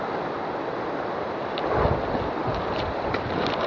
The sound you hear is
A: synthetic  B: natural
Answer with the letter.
B